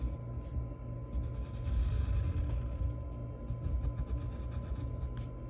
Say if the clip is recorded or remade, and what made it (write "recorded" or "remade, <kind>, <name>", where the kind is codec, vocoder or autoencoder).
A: recorded